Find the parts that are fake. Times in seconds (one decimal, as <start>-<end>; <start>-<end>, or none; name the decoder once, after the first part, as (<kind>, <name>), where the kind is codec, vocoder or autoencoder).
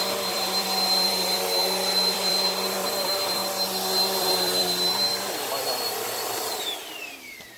0.0-3.4 (vocoder, BigVGAN v2); 4.2-7.6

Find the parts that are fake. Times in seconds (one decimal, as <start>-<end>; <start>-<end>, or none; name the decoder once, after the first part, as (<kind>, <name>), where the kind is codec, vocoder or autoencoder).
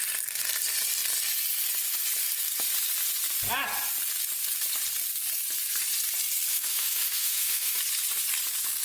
6.5-7.8 (autoencoder, DAC-VAE)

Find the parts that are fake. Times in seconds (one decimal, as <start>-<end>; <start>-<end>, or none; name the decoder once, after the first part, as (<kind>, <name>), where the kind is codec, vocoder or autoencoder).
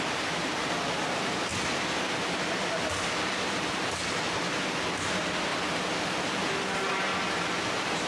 none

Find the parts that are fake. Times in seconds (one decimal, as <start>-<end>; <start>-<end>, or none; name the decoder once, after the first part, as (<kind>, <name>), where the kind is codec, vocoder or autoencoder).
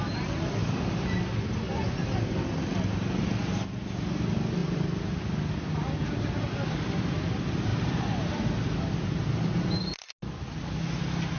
0.6-1.2 (vocoder, BigVGAN v2); 7.7-8.4